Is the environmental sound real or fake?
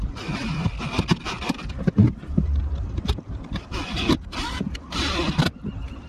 fake